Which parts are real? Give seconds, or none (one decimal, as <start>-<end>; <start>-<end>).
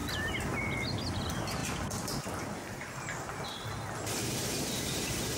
0.0-1.2